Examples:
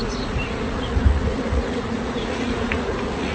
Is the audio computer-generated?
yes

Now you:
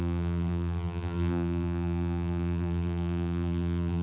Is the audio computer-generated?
yes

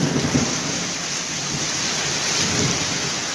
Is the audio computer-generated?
no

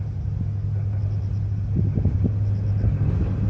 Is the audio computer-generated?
no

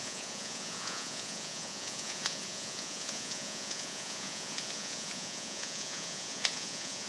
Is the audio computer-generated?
yes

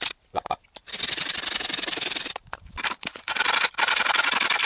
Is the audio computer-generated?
no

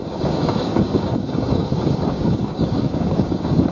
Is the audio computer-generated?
yes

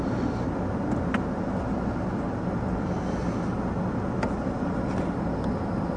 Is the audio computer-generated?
no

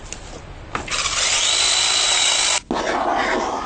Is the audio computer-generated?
no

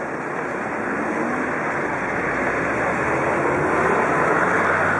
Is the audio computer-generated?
no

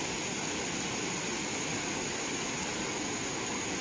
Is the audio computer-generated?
no